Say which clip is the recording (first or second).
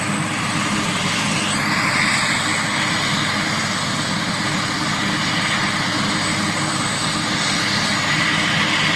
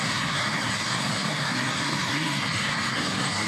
first